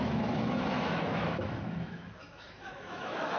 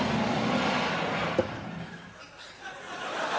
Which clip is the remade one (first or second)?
first